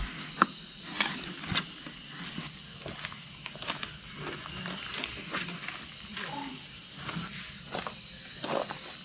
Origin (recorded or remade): recorded